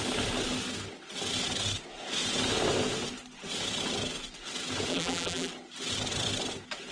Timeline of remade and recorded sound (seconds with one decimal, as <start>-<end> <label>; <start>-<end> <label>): 0.0-4.9 recorded; 4.9-5.5 remade; 5.5-6.9 recorded